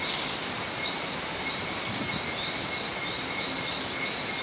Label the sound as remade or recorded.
recorded